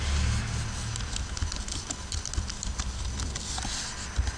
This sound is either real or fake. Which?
real